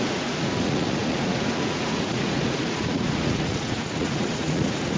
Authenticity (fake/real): fake